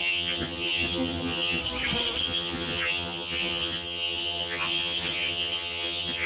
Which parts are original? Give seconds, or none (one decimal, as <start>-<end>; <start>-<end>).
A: 1.6-2.2